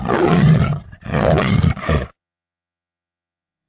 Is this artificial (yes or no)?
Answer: yes